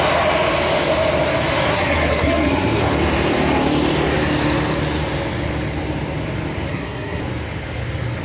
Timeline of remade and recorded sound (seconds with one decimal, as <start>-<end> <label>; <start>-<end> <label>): 0.0-1.7 recorded; 1.7-2.8 remade; 2.8-6.7 recorded; 6.7-7.2 remade; 7.2-8.2 recorded